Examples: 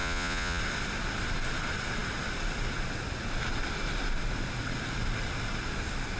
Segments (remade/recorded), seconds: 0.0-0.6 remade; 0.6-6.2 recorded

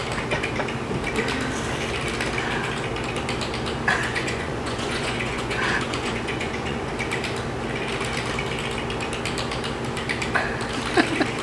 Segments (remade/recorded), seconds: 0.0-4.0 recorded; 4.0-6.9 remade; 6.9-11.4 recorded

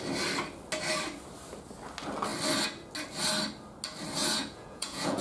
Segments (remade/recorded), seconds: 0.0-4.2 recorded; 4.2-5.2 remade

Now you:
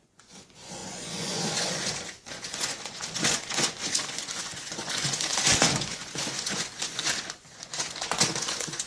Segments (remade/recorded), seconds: 0.0-8.9 remade

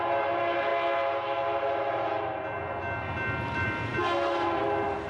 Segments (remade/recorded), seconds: 0.0-5.1 recorded

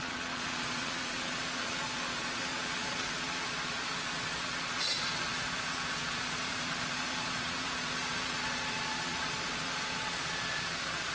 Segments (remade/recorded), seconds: 0.0-11.1 remade